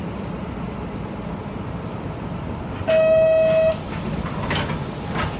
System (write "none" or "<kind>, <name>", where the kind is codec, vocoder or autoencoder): none